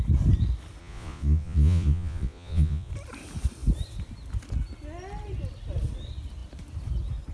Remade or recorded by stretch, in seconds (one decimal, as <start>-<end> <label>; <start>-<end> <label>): 0.0-0.8 recorded; 0.8-2.9 remade; 2.9-7.3 recorded